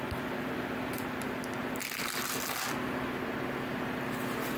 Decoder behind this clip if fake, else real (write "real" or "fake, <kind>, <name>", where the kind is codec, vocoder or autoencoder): real